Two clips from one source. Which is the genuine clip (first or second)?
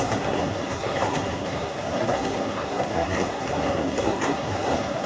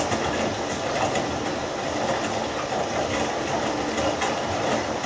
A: second